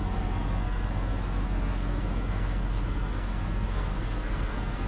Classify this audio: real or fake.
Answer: fake